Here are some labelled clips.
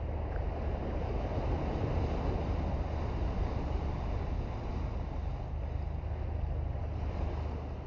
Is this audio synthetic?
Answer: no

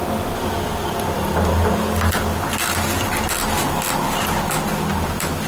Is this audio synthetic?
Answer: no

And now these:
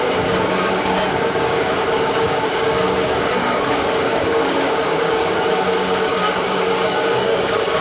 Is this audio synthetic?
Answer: yes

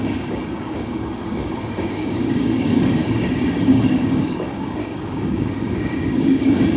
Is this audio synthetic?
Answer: yes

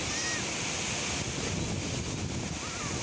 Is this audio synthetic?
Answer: no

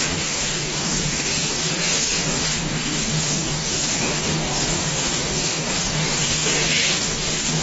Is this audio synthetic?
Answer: yes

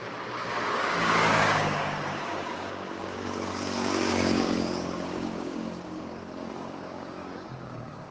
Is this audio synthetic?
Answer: yes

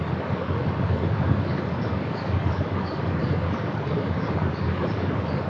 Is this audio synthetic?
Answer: yes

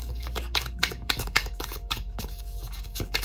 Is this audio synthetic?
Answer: yes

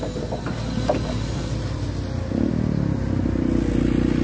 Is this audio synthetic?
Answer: no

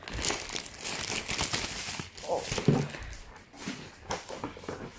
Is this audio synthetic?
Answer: no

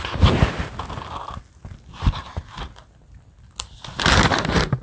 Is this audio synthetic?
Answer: no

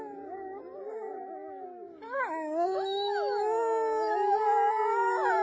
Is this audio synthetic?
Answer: no